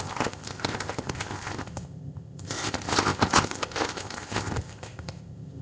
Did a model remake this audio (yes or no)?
yes